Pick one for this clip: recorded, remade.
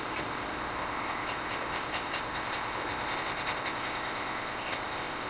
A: remade